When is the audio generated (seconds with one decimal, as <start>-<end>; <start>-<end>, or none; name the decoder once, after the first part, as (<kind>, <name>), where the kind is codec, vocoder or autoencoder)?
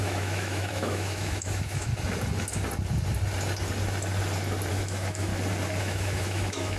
0.0-1.9 (autoencoder, DAC-VAE); 4.7-5.3; 5.8-6.8